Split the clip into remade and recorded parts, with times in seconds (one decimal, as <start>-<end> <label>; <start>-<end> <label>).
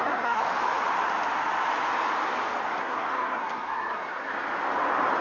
0.0-0.4 remade; 0.4-2.7 recorded; 2.7-4.3 remade; 4.3-5.2 recorded